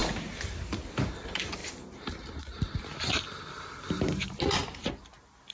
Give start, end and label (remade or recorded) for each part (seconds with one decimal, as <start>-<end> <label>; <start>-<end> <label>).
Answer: 0.0-5.5 recorded